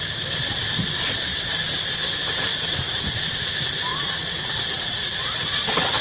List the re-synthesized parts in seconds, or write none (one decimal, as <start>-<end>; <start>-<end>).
2.5-3.1; 3.9-6.0